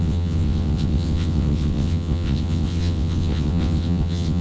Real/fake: fake